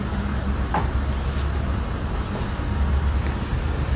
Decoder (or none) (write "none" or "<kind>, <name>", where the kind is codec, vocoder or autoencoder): none